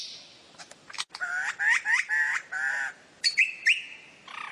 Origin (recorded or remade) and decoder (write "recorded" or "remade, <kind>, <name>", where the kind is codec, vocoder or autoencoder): recorded